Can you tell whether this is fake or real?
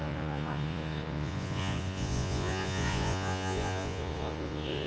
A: fake